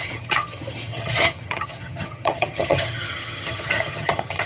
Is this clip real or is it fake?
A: fake